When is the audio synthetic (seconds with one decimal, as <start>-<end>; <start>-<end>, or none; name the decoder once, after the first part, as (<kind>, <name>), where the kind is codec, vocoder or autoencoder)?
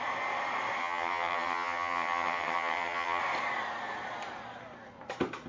0.8-3.2 (vocoder, HiFi-GAN)